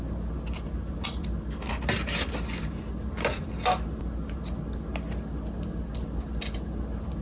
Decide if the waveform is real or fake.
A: real